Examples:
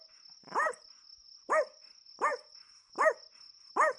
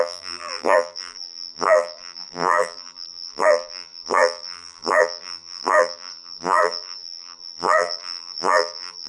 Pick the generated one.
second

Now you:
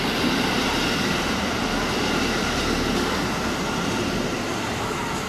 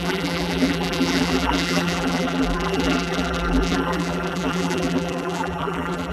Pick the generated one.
second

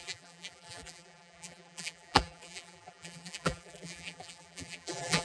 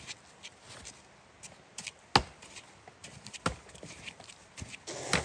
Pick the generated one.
first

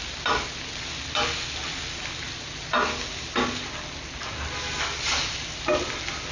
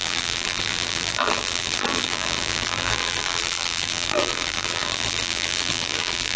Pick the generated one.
second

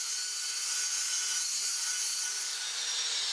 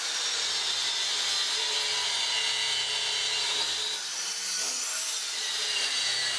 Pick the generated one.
second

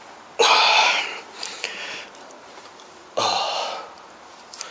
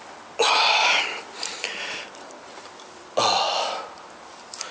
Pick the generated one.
first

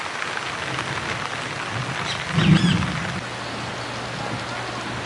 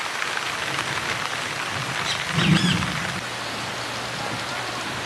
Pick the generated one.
second